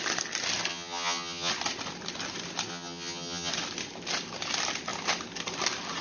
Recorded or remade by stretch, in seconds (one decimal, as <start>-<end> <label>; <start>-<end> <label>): 0.0-0.7 recorded; 0.7-1.5 remade; 1.5-2.7 recorded; 2.7-3.5 remade; 3.5-6.0 recorded